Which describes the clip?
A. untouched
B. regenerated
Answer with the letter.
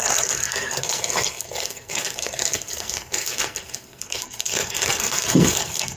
B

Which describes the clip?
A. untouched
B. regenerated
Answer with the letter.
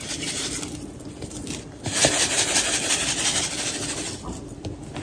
A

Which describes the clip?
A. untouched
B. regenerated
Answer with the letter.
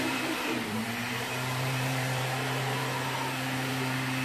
B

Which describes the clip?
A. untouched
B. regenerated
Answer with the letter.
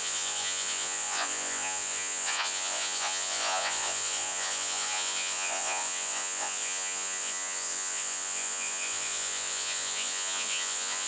B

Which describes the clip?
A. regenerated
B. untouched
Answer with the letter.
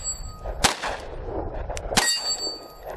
B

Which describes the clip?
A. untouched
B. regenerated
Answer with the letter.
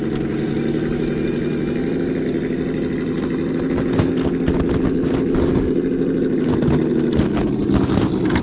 A